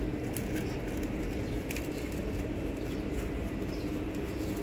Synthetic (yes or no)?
no